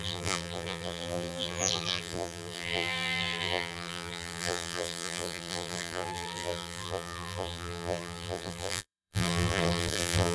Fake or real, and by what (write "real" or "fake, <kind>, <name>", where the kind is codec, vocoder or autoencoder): fake, vocoder, BigVGAN v2